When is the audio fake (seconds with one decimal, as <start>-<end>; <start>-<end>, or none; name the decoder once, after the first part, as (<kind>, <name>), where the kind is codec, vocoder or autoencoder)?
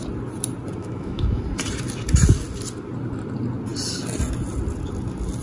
0.8-1.4 (autoencoder, DAC-VAE)